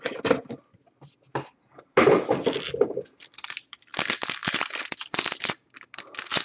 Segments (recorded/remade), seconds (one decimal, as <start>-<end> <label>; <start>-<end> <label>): 0.0-6.4 recorded